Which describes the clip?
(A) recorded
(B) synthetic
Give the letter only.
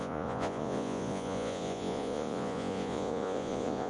B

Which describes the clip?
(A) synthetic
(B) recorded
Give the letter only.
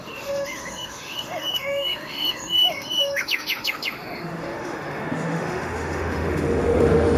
A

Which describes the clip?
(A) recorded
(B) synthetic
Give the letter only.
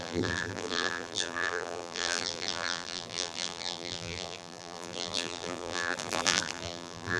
B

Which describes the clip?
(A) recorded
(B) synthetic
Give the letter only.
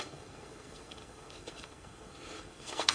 B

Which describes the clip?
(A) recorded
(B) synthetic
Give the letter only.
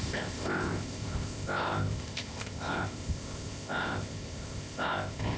B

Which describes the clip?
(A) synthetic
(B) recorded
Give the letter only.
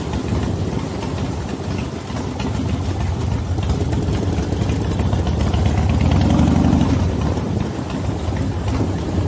B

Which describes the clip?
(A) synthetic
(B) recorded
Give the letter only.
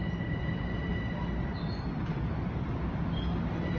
B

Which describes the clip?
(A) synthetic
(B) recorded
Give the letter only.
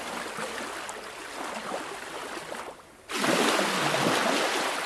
B